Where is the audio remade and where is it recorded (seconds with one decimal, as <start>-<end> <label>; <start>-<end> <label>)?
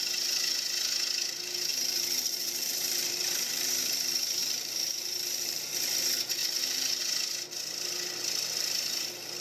0.0-1.7 recorded; 1.7-3.7 remade; 3.7-4.4 recorded; 4.4-5.7 remade; 5.7-6.4 recorded; 6.4-7.0 remade; 7.0-9.4 recorded